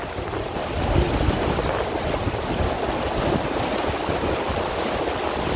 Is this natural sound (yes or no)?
yes